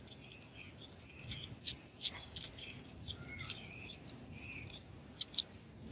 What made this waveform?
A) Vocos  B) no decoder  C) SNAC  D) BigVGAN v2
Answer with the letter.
B